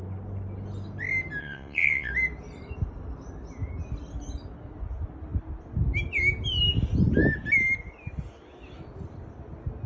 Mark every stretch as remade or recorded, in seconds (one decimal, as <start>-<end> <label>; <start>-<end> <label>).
0.0-1.4 recorded; 1.4-2.1 remade; 2.1-9.9 recorded